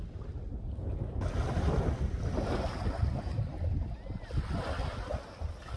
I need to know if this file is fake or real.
real